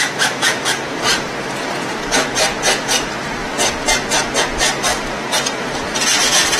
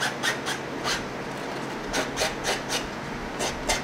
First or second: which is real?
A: second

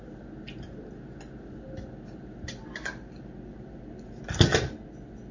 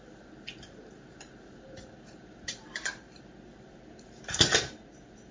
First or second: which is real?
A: first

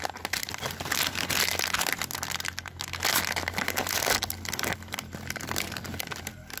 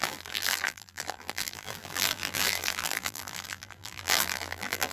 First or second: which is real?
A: first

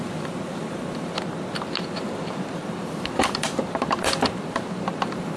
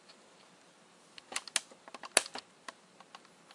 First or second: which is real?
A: second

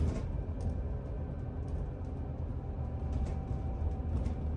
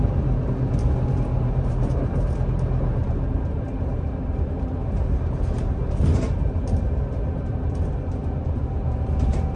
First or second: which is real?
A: first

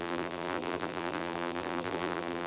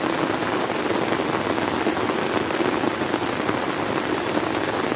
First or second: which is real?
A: second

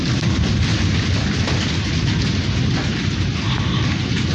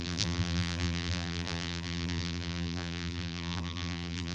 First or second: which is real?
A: first